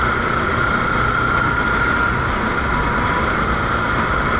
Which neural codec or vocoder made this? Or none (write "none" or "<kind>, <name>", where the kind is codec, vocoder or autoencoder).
none